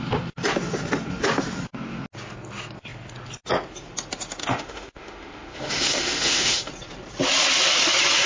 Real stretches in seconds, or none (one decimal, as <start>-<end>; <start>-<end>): 0.0-4.4; 6.7-8.3